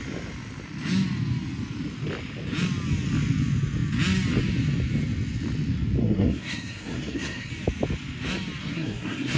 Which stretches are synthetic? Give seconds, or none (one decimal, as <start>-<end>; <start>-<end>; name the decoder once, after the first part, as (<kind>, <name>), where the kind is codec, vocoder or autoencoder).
6.0-7.5 (codec, SNAC); 8.6-9.4